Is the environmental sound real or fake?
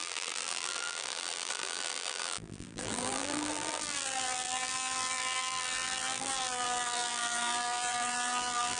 fake